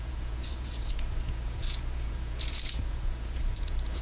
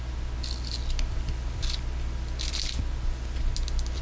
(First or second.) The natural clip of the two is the second